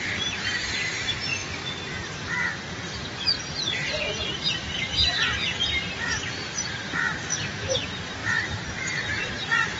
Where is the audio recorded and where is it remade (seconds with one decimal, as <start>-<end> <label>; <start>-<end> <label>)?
0.0-1.4 remade; 1.4-2.9 recorded; 2.9-4.4 remade; 4.4-6.6 recorded; 6.6-9.8 remade